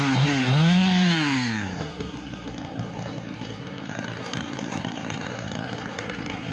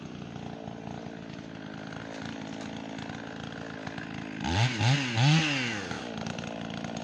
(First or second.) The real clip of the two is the second